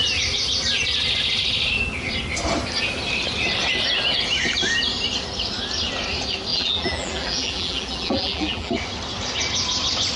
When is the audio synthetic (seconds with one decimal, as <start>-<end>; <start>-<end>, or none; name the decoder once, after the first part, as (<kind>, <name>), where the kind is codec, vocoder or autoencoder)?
6.5-8.7 (vocoder, BigVGAN v2)